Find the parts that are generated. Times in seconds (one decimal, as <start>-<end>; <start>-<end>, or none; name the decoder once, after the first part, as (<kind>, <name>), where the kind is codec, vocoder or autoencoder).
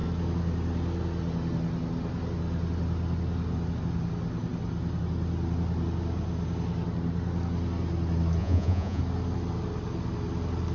8.4-9.0 (vocoder, Vocos)